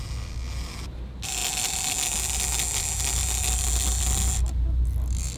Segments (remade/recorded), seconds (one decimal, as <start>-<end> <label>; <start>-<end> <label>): 0.0-5.4 recorded